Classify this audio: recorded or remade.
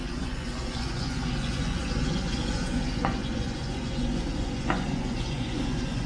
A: remade